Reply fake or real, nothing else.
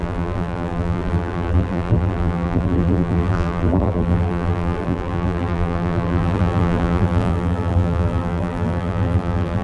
fake